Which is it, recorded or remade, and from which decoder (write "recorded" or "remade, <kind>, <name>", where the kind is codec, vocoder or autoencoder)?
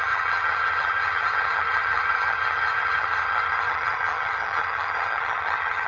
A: remade, vocoder, HiFi-GAN